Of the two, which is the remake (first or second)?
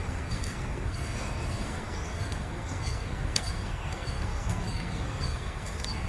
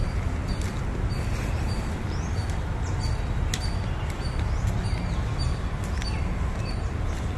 first